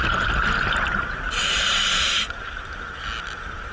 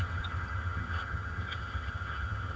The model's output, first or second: second